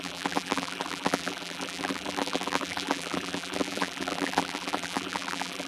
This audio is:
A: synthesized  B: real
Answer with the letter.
A